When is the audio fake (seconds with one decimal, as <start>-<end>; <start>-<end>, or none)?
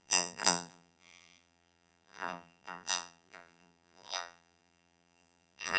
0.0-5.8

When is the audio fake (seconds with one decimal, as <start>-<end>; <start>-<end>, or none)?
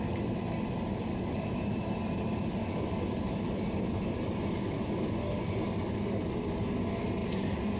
7.2-7.8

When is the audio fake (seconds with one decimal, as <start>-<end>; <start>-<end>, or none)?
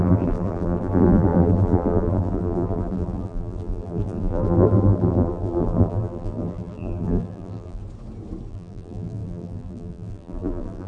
0.0-7.8; 8.5-10.9